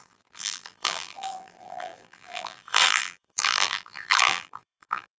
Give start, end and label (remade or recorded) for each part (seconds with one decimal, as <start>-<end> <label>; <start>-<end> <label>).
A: 0.0-5.2 remade